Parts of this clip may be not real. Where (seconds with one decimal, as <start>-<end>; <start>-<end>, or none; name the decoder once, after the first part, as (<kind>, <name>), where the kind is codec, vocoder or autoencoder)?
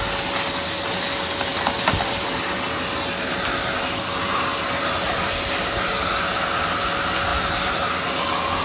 none